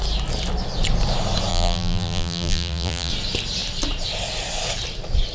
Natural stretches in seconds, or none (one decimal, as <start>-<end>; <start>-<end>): 0.0-1.5; 3.1-5.3